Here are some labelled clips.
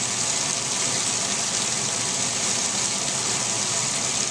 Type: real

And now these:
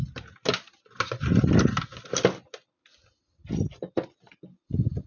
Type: real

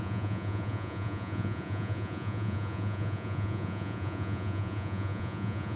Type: fake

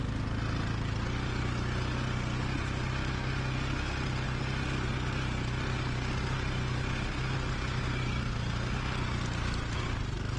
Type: real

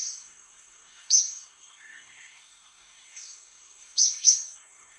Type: fake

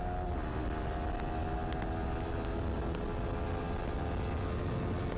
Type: real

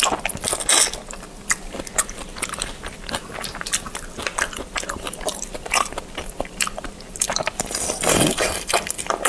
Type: real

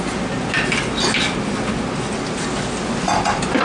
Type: real